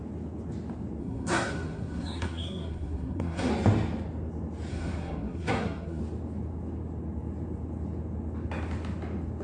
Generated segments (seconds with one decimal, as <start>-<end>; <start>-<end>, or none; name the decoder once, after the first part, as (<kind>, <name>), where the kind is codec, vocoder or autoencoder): 1.0-3.5 (codec, SNAC); 4.7-6.0